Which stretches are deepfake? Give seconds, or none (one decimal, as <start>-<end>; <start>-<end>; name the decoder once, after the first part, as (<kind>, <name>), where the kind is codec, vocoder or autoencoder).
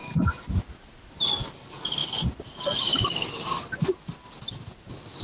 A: none